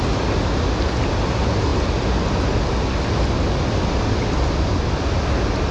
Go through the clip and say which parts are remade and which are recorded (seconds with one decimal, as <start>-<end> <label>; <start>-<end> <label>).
0.0-5.7 recorded

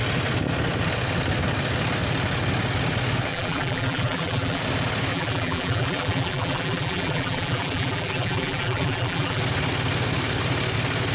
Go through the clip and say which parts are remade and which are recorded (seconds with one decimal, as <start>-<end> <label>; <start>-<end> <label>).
0.0-3.3 recorded; 3.3-4.6 remade; 4.6-5.1 recorded; 5.1-9.4 remade; 9.4-11.1 recorded

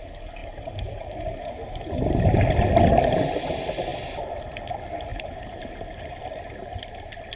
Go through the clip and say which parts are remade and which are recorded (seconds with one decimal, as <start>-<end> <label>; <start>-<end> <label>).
0.0-0.4 recorded; 0.4-1.5 remade; 1.5-5.1 recorded; 5.1-6.2 remade; 6.2-7.4 recorded

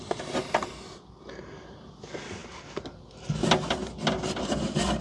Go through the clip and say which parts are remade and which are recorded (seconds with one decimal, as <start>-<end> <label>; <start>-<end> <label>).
0.0-5.0 recorded

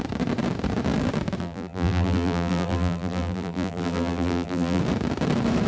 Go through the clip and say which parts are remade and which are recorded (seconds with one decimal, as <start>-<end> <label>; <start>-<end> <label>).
0.0-1.4 recorded; 1.4-4.8 remade; 4.8-5.7 recorded

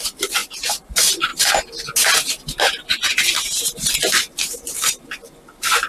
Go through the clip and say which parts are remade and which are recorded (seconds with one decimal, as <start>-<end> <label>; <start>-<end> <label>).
0.0-1.3 remade; 1.3-4.8 recorded; 4.8-5.9 remade